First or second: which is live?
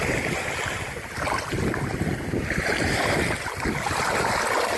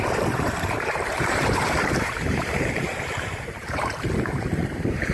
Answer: first